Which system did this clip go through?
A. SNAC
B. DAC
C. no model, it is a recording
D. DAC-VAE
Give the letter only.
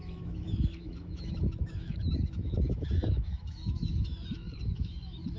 D